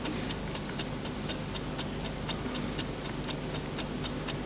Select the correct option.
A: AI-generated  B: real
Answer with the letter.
B